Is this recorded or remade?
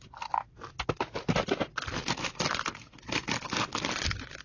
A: recorded